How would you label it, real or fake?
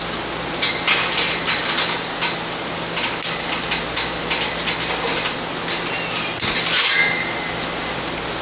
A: real